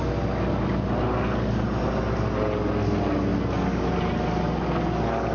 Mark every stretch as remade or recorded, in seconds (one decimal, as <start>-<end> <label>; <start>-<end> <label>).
0.0-5.3 recorded